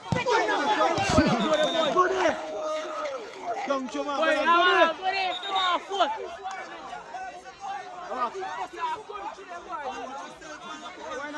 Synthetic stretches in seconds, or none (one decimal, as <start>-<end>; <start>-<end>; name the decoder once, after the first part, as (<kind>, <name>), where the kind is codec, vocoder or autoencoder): 2.0-3.7 (codec, HILCodec)